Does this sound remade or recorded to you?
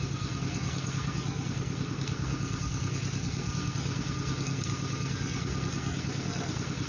remade